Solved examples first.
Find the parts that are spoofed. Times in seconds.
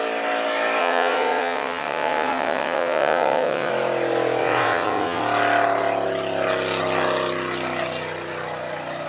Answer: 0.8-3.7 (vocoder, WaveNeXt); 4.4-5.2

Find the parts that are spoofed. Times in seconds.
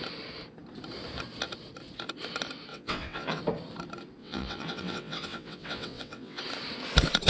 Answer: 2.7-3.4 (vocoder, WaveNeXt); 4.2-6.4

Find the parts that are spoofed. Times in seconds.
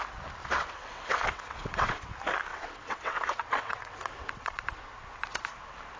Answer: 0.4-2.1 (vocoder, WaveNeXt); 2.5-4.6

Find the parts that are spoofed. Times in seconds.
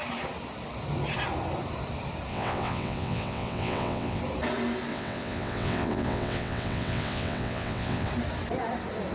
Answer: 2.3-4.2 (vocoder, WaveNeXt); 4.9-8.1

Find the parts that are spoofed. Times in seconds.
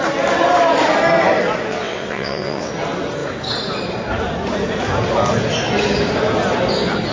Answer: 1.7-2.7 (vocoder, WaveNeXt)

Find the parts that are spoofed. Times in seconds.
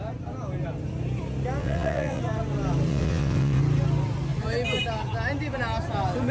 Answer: 1.6-2.2 (vocoder, WaveNeXt); 2.9-3.6